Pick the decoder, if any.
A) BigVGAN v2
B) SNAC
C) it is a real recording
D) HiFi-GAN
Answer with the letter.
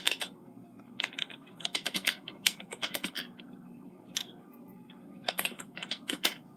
B